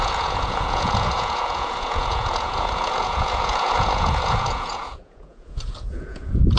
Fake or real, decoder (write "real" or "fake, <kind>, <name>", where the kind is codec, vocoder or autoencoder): fake, vocoder, Vocos